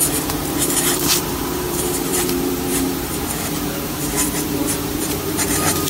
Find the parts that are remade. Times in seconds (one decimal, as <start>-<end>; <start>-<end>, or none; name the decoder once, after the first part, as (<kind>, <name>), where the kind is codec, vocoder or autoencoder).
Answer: 0.0-5.9 (vocoder, BigVGAN v2)

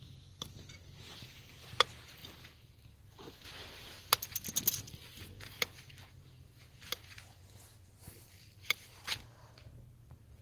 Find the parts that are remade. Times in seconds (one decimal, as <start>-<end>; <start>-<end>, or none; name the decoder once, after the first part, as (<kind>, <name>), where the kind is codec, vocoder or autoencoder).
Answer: 8.0-9.0 (vocoder, BigVGAN v2)

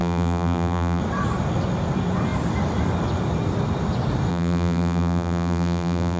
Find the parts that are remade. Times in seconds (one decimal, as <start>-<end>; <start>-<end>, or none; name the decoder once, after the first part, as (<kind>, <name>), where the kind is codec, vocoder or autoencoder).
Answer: 0.0-1.0 (vocoder, BigVGAN v2); 4.3-6.2

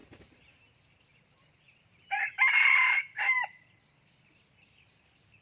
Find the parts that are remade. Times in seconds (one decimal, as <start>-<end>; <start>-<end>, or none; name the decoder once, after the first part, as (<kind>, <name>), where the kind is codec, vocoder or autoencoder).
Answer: 0.0-3.2 (vocoder, BigVGAN v2)

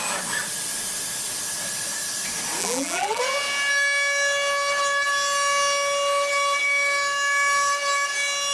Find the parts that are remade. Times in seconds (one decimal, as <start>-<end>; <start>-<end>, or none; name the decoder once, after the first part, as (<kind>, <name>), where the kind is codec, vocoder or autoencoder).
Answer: 2.6-3.2 (vocoder, BigVGAN v2)

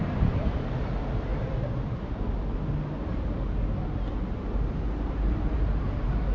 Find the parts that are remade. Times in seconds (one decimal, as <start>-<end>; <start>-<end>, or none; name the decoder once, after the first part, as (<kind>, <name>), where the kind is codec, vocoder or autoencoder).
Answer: 0.0-1.3 (vocoder, BigVGAN v2); 5.1-6.3

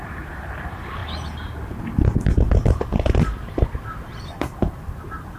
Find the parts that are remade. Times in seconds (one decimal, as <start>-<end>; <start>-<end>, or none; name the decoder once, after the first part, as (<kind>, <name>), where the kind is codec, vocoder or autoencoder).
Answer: 0.0-1.0 (vocoder, BigVGAN v2); 4.2-5.4

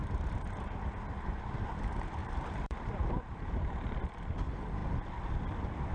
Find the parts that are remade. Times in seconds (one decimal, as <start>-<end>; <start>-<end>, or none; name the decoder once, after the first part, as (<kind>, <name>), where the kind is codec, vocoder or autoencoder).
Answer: 2.2-4.0 (vocoder, BigVGAN v2)